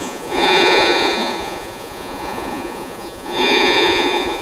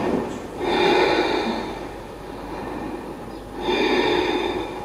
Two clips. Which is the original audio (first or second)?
second